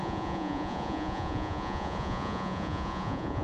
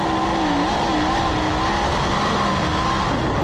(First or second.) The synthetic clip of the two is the first